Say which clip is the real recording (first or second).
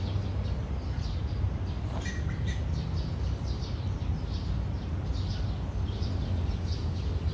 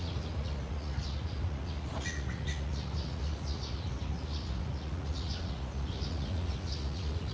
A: first